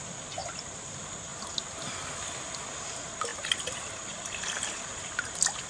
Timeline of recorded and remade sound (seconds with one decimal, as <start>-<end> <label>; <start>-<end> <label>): 0.0-0.4 recorded; 0.4-0.9 remade; 0.9-5.7 recorded